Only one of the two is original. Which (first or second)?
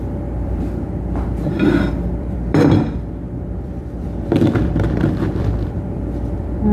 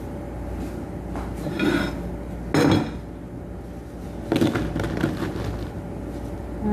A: second